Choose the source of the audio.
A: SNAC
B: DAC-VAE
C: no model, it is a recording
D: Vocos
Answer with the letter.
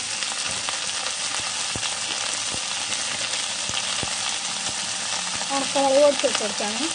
C